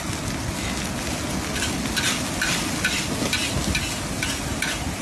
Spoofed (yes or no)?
no